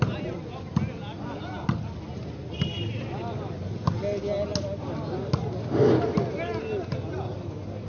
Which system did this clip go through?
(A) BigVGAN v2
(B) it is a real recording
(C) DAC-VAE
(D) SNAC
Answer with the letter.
B